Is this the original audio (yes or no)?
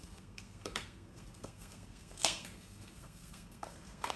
no